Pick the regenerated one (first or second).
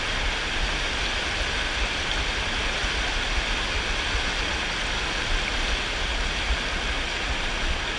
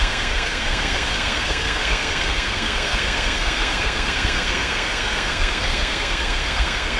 second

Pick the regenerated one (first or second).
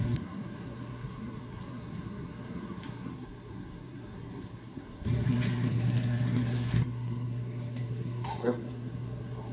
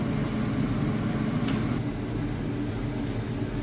first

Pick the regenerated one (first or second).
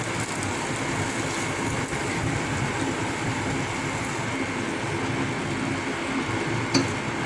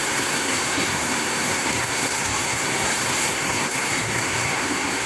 second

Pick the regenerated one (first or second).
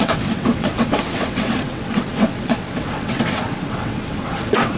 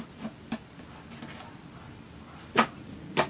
first